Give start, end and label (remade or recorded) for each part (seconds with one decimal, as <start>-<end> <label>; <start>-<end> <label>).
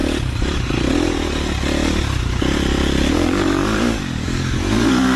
0.0-3.1 recorded; 3.1-5.2 remade